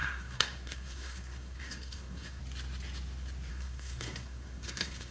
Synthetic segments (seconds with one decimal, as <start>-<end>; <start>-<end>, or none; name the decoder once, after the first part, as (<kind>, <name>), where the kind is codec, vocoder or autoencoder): 0.0-2.4 (codec, SNAC); 3.5-5.1